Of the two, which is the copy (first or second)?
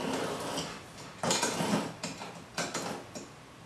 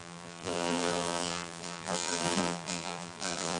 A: second